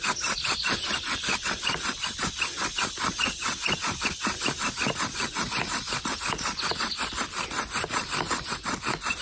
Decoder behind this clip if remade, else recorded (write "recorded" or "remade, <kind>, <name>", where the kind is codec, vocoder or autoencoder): recorded